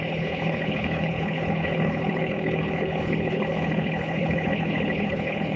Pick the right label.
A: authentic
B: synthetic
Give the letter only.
B